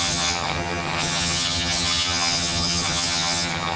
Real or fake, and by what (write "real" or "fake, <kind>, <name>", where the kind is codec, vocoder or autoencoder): fake, vocoder, HiFi-GAN